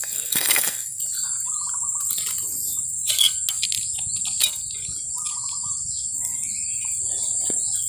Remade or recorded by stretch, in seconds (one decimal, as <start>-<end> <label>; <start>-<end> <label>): 0.0-1.0 remade; 1.0-7.9 recorded